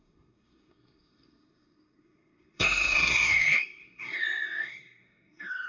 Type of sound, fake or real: fake